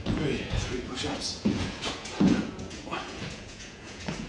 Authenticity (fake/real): fake